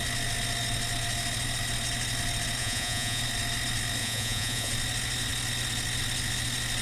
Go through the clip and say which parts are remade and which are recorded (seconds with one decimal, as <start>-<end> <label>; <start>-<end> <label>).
0.0-2.6 recorded; 2.6-3.2 remade; 3.2-4.0 recorded; 4.0-4.7 remade; 4.7-6.8 recorded